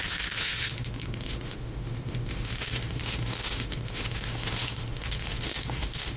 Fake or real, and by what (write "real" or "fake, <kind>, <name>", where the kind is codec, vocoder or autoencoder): fake, autoencoder, DAC-VAE